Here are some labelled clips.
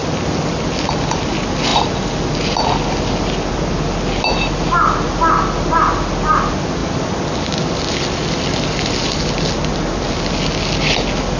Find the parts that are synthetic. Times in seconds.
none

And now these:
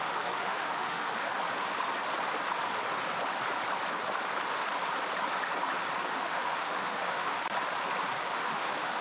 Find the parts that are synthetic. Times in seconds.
0.0-1.3 (autoencoder, DAC-VAE); 6.0-7.4; 8.2-9.0

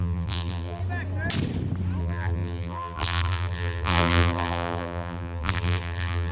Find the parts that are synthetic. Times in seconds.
0.0-0.8 (vocoder, BigVGAN v2); 2.0-6.3

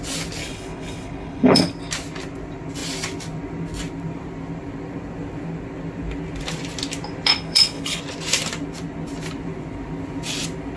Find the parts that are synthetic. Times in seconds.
0.4-1.6 (codec, HILCodec); 7.3-8.0

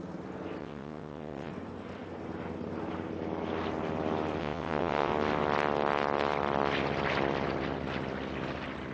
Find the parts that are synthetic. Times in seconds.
0.6-1.5 (vocoder, WaveNeXt); 4.4-5.1